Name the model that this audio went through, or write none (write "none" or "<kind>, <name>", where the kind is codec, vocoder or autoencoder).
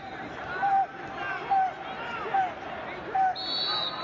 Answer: none